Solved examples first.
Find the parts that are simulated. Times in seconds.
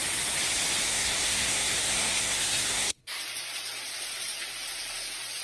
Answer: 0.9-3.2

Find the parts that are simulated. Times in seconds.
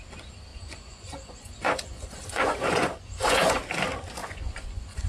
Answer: 0.5-3.6; 4.2-5.1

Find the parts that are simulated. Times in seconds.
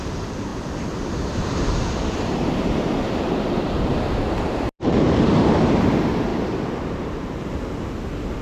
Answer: 0.0-8.4